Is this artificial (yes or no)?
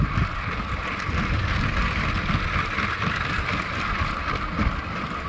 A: no